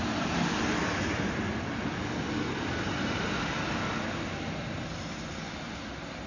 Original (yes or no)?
yes